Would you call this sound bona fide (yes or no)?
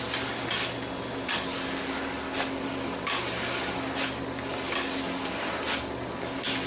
yes